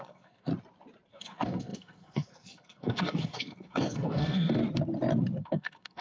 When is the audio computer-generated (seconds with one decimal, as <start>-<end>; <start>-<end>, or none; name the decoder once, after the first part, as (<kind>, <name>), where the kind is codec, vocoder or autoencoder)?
0.0-0.5 (codec, SNAC); 1.1-4.6; 5.4-6.0